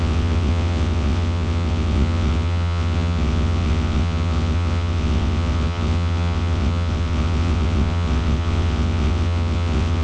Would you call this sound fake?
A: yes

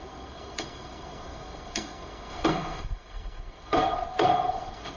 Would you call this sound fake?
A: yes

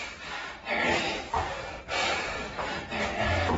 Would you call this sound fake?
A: no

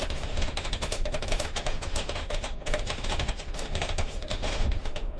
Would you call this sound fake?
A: yes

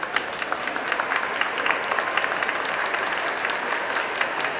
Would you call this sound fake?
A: yes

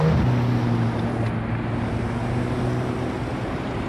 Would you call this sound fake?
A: no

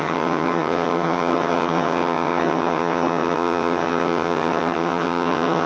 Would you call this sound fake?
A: yes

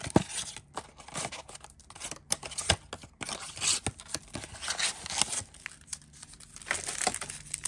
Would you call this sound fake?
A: no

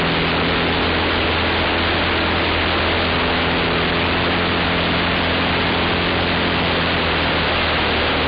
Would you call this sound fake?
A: no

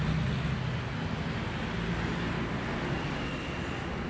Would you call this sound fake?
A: no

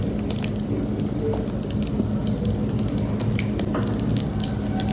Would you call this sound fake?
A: no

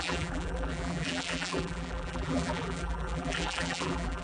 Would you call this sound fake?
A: yes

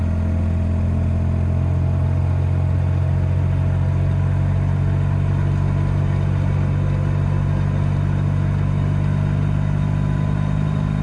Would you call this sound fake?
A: no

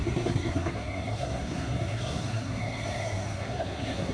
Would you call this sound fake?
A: yes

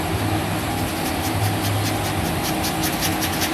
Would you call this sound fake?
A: no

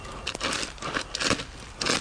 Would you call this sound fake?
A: no